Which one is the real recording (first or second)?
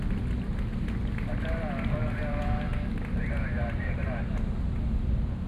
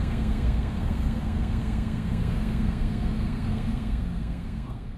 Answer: first